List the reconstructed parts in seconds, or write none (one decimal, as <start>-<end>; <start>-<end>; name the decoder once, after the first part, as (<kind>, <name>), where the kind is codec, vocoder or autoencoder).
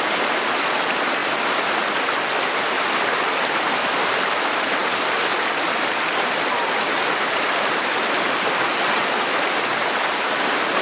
none